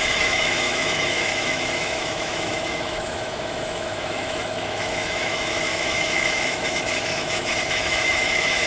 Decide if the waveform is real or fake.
fake